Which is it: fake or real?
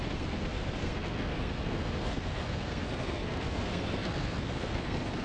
fake